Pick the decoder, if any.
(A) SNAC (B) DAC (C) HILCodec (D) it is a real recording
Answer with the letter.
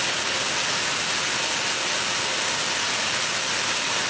D